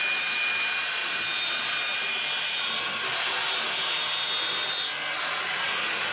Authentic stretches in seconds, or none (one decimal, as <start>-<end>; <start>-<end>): 0.0-6.1